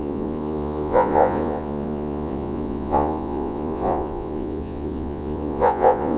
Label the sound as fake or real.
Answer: fake